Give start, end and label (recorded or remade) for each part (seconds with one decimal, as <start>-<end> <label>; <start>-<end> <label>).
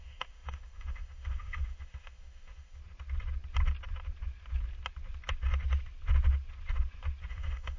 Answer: 0.0-2.8 remade; 2.8-7.3 recorded; 7.3-7.8 remade